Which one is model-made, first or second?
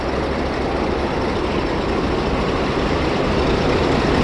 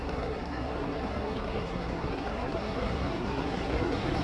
second